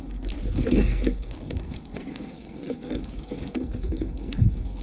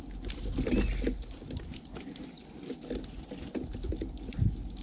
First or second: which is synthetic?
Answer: first